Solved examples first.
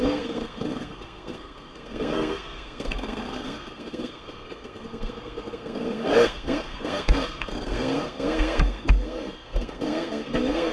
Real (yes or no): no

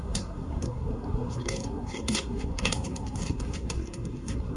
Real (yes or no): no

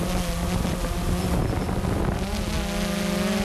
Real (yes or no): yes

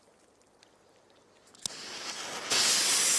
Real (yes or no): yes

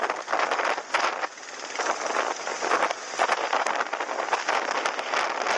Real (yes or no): yes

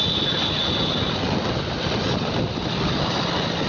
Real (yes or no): yes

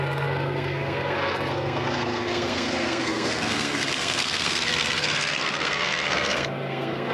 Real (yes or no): no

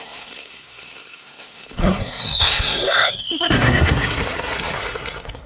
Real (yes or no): no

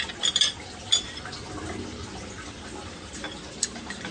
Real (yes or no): yes